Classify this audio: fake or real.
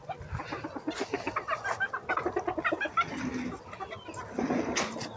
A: real